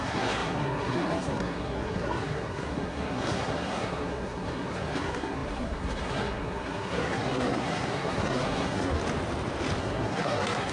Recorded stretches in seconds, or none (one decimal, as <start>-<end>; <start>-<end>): 9.0-9.8